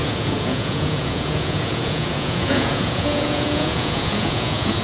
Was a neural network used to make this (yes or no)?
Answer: yes